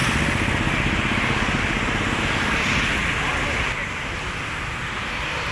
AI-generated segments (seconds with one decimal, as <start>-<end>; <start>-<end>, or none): none